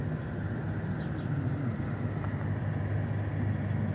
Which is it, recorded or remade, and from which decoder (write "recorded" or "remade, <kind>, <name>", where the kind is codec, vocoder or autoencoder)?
recorded